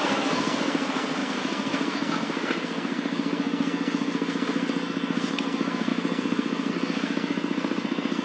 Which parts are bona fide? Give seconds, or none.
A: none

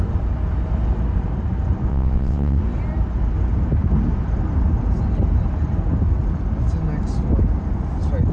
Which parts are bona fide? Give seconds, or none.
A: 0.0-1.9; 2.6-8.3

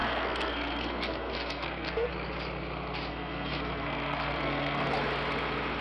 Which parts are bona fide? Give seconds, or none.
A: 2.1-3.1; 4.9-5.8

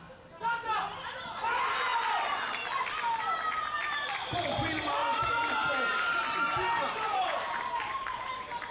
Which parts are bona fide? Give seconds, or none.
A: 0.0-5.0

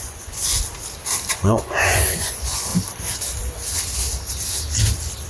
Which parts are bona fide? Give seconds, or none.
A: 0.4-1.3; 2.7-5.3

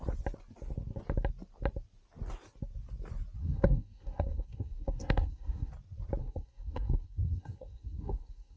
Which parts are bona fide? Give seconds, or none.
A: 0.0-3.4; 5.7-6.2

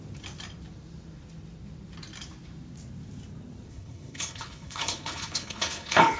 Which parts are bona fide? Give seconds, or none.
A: 0.0-3.7

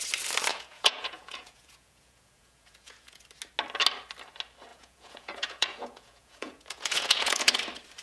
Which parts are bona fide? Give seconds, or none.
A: 0.0-0.5; 3.2-4.7; 7.5-8.0